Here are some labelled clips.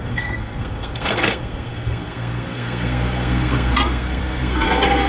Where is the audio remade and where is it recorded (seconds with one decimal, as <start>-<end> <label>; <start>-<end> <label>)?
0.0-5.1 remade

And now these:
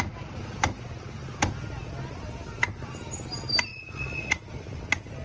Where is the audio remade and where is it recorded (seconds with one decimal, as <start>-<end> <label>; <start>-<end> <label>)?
0.0-3.7 recorded; 3.7-4.8 remade; 4.8-5.2 recorded

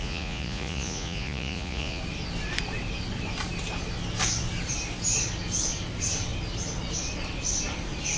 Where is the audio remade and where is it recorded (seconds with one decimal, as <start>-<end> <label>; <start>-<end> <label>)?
0.0-2.0 remade; 2.0-8.2 recorded